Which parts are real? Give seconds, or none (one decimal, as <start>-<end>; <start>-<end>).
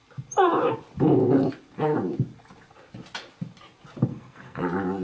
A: 0.0-4.1; 4.6-5.0